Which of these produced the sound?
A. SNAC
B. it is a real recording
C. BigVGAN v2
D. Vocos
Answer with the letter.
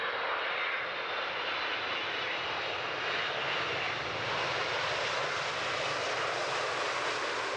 B